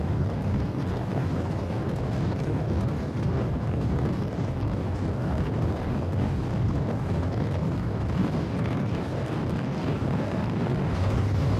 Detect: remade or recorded remade